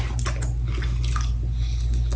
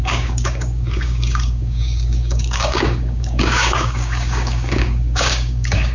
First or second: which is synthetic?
second